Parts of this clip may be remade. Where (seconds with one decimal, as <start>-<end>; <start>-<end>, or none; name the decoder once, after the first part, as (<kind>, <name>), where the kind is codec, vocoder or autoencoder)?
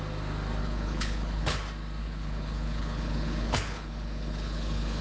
0.6-1.6 (codec, HILCodec); 2.0-5.0